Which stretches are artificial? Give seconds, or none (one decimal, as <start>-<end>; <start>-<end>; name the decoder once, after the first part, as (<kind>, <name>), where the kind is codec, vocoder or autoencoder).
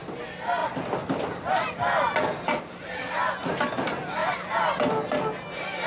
0.6-2.6 (vocoder, BigVGAN v2); 4.2-5.2